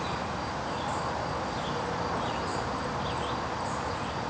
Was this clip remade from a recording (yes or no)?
no